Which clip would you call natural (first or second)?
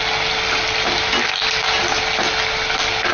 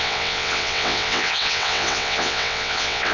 first